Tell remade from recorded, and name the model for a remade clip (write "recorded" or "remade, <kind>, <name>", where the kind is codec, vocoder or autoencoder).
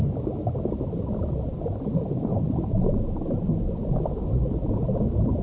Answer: recorded